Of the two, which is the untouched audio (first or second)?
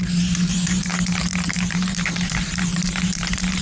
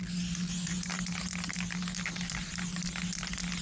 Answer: second